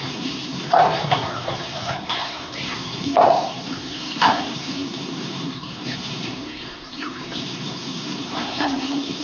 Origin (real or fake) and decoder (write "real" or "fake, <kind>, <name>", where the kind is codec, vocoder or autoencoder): fake, codec, SNAC